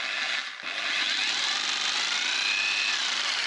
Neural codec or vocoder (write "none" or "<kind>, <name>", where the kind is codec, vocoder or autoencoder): none